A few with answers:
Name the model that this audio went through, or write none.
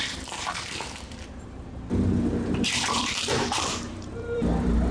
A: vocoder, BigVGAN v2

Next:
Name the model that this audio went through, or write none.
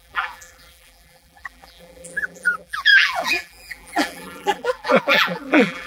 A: vocoder, BigVGAN v2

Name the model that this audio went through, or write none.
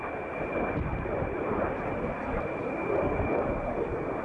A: none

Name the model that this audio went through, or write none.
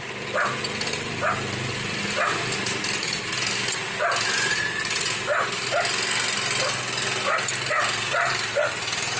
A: none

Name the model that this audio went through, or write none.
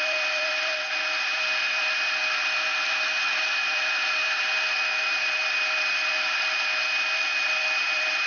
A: vocoder, BigVGAN v2